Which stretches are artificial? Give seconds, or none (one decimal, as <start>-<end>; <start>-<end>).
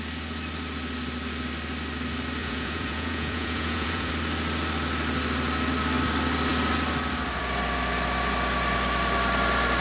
2.4-4.1